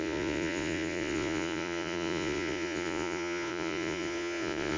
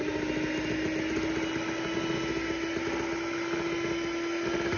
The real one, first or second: second